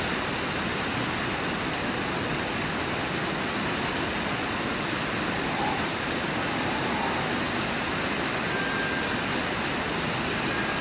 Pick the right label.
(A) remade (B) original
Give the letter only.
B